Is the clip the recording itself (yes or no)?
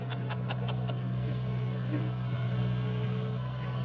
no